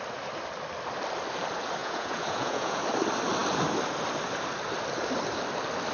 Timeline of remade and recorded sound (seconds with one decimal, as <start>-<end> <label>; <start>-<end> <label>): 0.0-1.8 recorded; 1.8-2.8 remade; 2.8-5.9 recorded

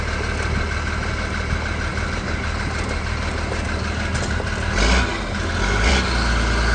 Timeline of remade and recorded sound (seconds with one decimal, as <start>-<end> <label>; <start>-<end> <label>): 0.0-6.7 recorded

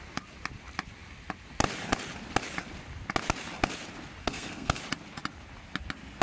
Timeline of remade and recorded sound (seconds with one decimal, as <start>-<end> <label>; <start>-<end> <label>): 0.0-4.2 recorded; 4.2-4.8 remade; 4.8-6.2 recorded

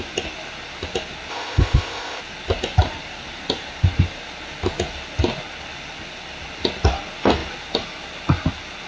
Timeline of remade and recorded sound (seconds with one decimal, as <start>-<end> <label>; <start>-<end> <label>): 0.0-1.3 recorded; 1.3-2.2 remade; 2.2-8.9 recorded

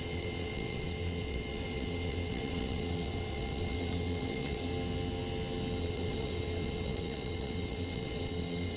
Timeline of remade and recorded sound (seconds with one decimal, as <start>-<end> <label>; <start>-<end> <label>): 0.0-4.7 remade; 4.7-5.8 recorded; 5.8-8.8 remade

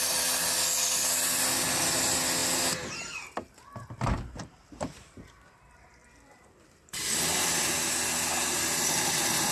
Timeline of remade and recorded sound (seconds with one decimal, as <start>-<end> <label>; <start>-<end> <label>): 0.0-9.5 recorded

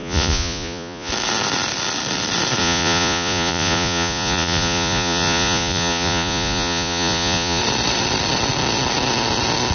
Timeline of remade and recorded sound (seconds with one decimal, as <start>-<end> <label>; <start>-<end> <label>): 0.0-1.1 remade; 1.1-2.6 recorded; 2.6-7.6 remade; 7.6-9.7 recorded